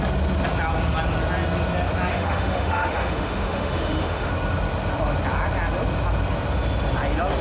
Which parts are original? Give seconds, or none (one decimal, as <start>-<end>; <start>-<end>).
0.0-2.1; 4.3-7.4